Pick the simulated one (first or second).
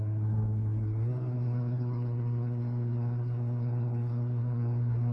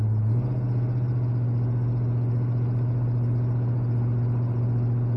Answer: first